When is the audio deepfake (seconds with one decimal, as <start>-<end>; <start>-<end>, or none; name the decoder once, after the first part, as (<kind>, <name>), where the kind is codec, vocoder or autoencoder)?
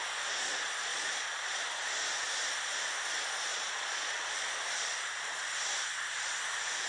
0.9-1.6 (vocoder, Vocos); 3.5-4.3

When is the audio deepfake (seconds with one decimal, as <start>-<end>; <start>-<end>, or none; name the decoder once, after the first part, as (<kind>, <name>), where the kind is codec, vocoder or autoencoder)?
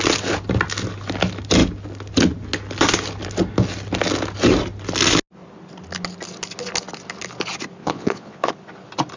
7.8-8.5 (vocoder, Vocos)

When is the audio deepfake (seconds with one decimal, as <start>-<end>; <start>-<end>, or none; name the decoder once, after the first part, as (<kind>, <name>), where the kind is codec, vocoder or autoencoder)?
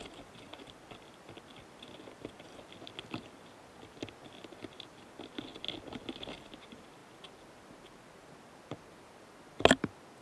none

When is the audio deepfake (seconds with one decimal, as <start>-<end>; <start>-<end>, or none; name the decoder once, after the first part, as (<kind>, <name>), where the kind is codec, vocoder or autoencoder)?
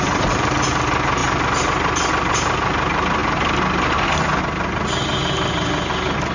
none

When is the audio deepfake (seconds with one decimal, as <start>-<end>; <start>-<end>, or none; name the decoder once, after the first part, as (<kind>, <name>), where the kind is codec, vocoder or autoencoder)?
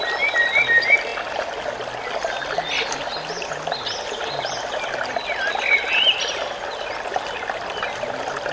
none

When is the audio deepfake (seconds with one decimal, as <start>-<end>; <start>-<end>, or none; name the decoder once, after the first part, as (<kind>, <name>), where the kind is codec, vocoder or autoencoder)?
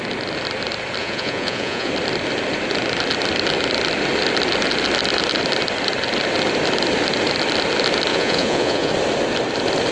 1.0-1.9 (vocoder, Vocos); 8.1-8.9